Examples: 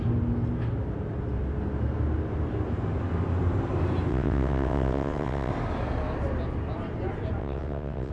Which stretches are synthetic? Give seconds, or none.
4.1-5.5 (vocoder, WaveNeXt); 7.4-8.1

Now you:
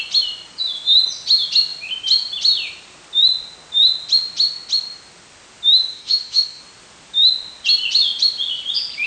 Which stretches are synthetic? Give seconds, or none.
5.8-6.6 (autoencoder, DAC-VAE)

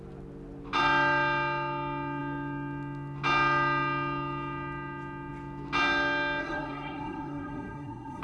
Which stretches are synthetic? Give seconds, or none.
6.4-8.2 (codec, SNAC)